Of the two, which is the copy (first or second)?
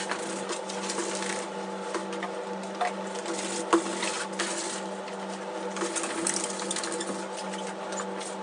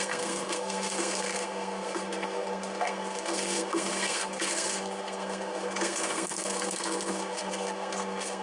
second